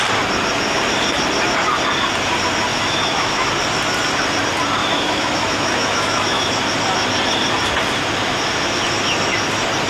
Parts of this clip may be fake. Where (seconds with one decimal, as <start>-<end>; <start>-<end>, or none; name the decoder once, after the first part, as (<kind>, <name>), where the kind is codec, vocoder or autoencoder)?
2.7-3.5 (autoencoder, DAC-VAE); 4.8-6.5